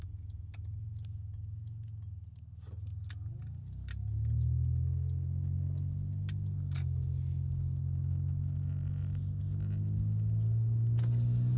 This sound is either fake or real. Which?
real